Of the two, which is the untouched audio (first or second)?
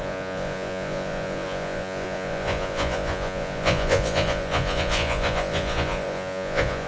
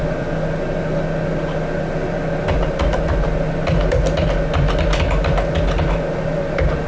second